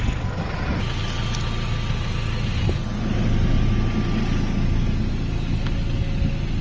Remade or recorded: recorded